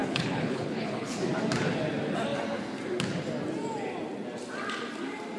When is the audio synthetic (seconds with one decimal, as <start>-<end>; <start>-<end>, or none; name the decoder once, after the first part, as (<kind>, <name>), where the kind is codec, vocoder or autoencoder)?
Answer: 0.0-1.2 (codec, HILCodec)